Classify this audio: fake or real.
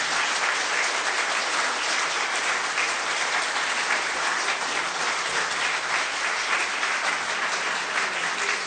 real